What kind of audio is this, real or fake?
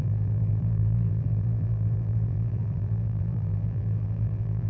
fake